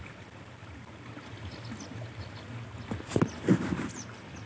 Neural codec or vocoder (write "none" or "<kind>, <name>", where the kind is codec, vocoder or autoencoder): none